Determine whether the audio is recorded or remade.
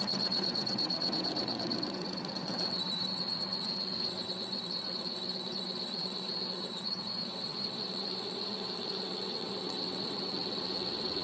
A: remade